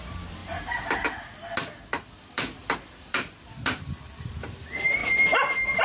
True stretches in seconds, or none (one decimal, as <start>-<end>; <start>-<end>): 0.0-0.4; 1.0-1.9; 4.3-5.8